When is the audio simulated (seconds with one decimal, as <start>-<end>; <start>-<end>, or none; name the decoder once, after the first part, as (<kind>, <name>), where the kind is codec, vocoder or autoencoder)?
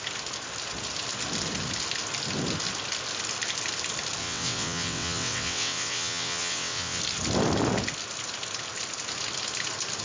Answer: 4.2-7.0 (vocoder, WaveNeXt)